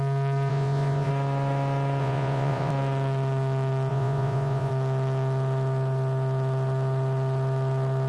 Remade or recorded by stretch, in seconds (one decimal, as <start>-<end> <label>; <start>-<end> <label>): 0.0-0.5 recorded; 0.5-1.1 remade; 1.1-2.0 recorded; 2.0-2.7 remade; 2.7-3.9 recorded; 3.9-4.7 remade; 4.7-8.1 recorded